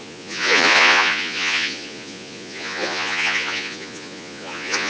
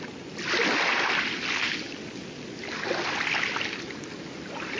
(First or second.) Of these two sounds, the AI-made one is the first